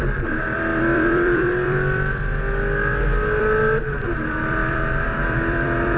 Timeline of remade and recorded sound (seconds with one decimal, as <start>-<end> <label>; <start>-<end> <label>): 0.0-2.2 remade; 2.2-3.0 recorded; 3.0-6.0 remade